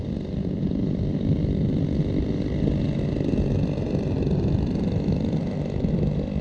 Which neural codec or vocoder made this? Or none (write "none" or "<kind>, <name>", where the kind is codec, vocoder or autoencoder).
none